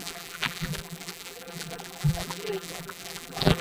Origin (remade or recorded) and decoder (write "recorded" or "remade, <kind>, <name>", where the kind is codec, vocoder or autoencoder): remade, vocoder, BigVGAN v2